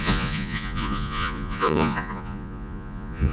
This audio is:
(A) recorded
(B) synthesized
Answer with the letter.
B